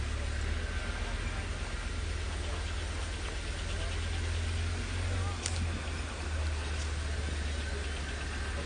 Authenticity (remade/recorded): recorded